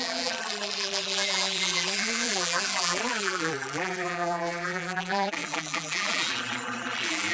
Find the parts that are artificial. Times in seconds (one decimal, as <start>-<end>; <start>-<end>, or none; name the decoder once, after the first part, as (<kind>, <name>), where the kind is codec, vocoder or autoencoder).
0.0-7.3 (vocoder, BigVGAN v2)